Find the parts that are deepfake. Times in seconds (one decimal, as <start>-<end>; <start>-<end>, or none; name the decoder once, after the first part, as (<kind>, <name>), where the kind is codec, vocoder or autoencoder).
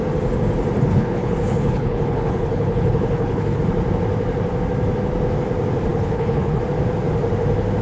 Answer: 0.9-3.6 (codec, HILCodec); 5.9-6.6